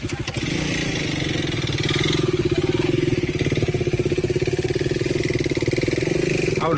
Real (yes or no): yes